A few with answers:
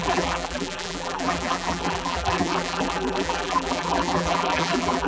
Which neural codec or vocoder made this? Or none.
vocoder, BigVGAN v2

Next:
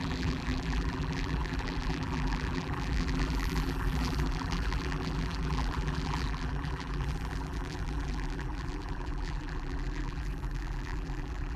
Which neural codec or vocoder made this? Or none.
vocoder, BigVGAN v2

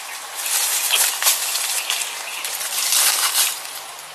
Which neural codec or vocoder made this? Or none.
none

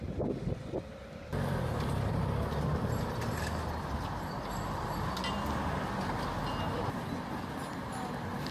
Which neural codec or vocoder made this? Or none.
none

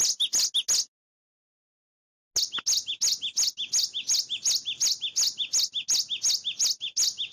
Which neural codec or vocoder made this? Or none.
none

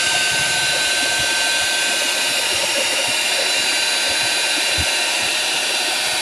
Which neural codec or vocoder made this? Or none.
vocoder, BigVGAN v2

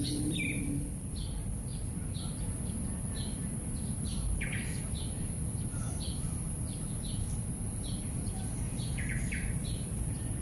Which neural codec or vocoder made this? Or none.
vocoder, BigVGAN v2